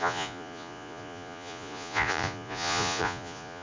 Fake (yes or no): yes